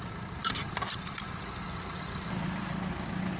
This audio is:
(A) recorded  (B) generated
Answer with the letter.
A